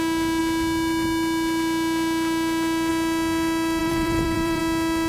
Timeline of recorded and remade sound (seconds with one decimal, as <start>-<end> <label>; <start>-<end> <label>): 0.0-3.8 recorded; 3.8-4.6 remade; 4.6-5.1 recorded